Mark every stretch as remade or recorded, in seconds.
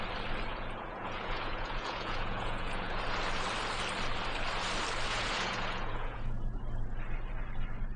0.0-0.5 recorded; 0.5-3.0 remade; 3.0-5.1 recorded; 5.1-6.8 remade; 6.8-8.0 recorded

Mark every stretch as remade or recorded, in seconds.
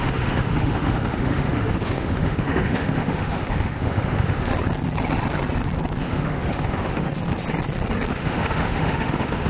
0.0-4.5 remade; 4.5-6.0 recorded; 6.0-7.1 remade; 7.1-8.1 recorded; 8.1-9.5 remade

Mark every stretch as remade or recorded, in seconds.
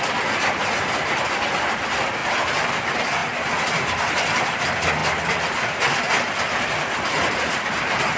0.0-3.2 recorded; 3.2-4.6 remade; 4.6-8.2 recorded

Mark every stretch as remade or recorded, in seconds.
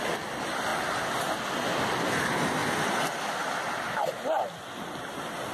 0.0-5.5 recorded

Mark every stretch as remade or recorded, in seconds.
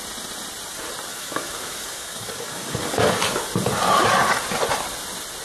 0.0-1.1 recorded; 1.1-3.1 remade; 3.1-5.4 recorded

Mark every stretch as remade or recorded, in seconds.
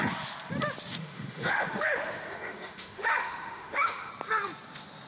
0.0-1.0 recorded; 1.0-4.1 remade; 4.1-5.1 recorded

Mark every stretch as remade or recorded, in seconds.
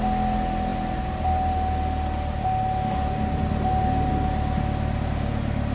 0.0-5.7 recorded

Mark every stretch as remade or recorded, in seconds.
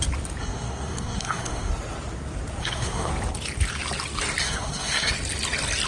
0.0-0.4 recorded; 0.4-1.7 remade; 1.7-2.6 recorded; 2.6-3.1 remade; 3.1-4.4 recorded; 4.4-5.1 remade; 5.1-5.9 recorded